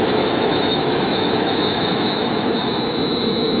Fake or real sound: fake